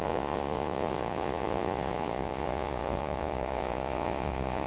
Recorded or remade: remade